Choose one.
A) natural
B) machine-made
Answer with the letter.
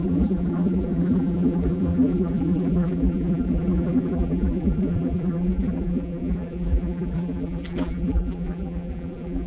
B